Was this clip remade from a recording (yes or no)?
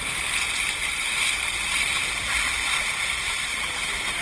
no